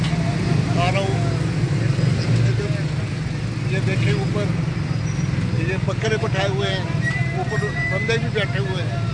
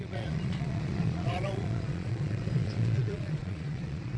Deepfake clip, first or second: second